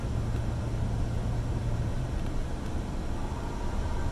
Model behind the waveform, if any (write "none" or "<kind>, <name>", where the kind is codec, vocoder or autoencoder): none